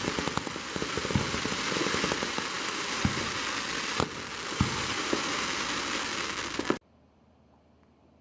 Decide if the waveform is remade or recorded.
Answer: recorded